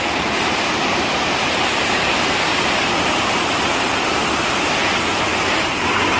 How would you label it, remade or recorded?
remade